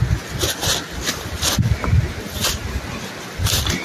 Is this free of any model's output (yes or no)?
yes